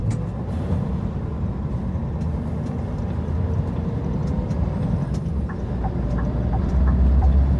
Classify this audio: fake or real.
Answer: fake